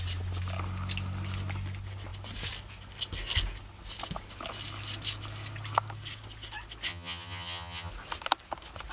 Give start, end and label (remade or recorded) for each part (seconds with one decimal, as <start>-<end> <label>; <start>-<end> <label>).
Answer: 0.0-6.9 recorded; 6.9-7.9 remade; 7.9-8.9 recorded